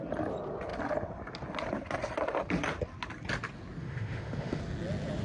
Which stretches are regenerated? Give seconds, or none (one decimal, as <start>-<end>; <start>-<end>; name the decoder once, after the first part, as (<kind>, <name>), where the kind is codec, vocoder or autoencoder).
3.8-4.6 (autoencoder, DAC-VAE)